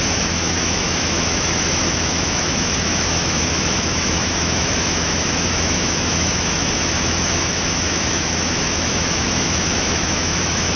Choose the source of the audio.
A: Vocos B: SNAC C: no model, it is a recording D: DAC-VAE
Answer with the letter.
D